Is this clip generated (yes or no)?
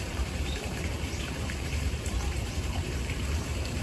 yes